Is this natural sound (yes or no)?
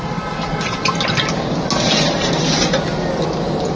yes